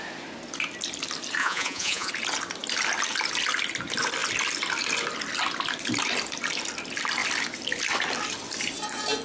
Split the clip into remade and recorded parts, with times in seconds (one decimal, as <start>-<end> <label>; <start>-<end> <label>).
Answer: 0.0-1.4 recorded; 1.4-2.1 remade; 2.1-9.2 recorded